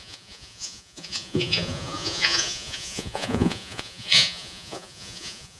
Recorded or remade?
remade